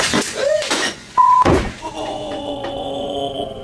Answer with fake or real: fake